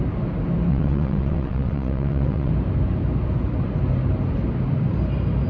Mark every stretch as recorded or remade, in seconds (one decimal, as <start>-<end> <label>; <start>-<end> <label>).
0.0-0.7 recorded; 0.7-2.5 remade; 2.5-5.5 recorded